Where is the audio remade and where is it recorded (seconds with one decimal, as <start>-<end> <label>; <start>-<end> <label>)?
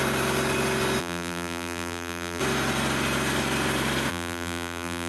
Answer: 0.0-1.0 recorded; 1.0-2.4 remade; 2.4-4.1 recorded; 4.1-5.1 remade